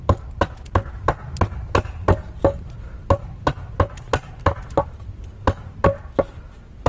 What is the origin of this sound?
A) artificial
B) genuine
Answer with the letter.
B